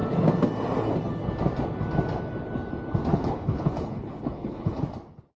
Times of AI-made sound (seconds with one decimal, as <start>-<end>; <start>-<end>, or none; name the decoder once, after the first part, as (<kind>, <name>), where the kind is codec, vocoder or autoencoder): 3.1-4.8 (codec, HILCodec)